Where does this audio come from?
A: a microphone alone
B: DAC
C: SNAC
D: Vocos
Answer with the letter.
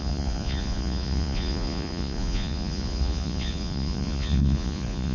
D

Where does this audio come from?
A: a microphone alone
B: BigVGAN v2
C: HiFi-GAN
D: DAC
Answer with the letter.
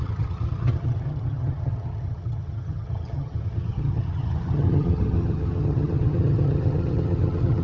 C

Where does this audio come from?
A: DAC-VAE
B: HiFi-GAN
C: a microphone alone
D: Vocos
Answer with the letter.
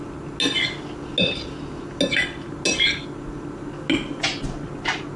C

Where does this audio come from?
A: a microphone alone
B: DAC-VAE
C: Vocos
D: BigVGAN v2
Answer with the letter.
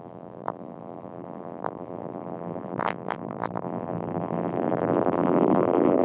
D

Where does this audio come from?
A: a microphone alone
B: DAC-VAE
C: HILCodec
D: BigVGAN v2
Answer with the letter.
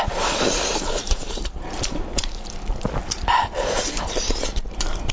D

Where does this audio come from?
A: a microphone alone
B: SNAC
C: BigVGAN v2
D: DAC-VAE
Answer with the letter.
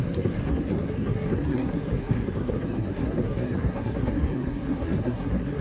B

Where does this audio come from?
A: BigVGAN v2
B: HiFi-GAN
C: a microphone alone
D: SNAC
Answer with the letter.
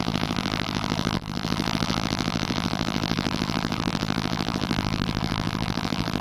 A